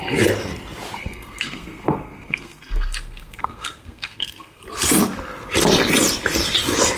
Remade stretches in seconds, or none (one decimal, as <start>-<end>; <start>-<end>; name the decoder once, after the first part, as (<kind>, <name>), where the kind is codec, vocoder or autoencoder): 1.0-4.6 (codec, SNAC)